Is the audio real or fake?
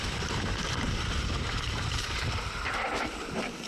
fake